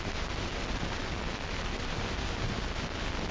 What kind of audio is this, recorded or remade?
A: recorded